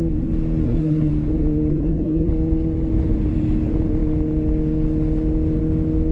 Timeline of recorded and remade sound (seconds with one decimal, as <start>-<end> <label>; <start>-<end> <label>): 0.0-0.6 recorded; 0.6-1.1 remade; 1.1-1.7 recorded; 1.7-2.3 remade; 2.3-6.1 recorded